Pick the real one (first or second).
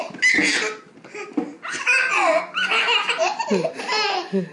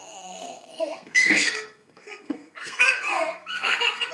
first